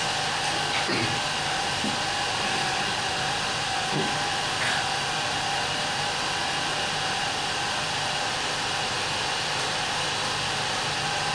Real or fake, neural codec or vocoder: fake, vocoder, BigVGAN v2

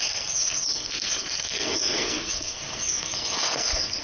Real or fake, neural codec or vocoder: fake, codec, SNAC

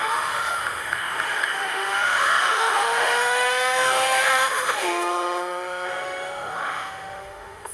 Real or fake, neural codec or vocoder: fake, autoencoder, DAC-VAE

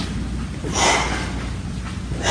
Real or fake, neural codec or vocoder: real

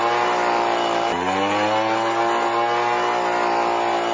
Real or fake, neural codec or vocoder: real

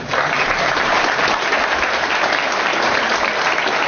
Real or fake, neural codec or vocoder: real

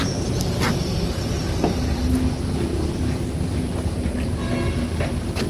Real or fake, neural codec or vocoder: real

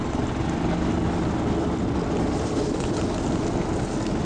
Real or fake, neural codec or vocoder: real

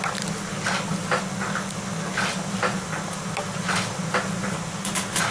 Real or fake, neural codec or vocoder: real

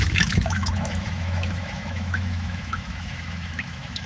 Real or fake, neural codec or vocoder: fake, autoencoder, DAC-VAE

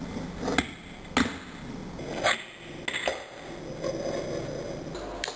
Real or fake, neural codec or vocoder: real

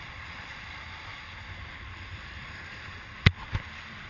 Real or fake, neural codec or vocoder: fake, vocoder, BigVGAN v2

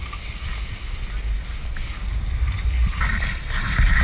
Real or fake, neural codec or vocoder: real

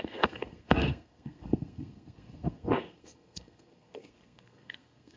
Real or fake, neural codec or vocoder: fake, codec, SNAC